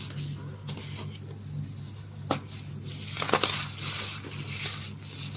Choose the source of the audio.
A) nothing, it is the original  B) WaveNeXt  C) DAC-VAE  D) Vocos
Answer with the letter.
A